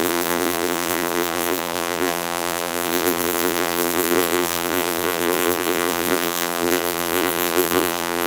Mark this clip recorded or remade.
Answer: remade